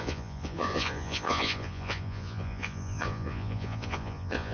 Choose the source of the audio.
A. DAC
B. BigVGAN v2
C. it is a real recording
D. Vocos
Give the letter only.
D